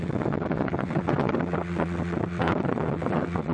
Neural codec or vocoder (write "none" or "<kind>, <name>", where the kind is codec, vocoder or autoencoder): vocoder, WaveNeXt